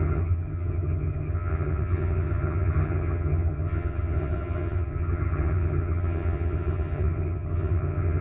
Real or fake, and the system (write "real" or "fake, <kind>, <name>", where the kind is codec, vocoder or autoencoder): fake, vocoder, HiFi-GAN